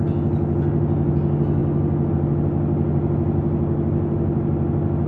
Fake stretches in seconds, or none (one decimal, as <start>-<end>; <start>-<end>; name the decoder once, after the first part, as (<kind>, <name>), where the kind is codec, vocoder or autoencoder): none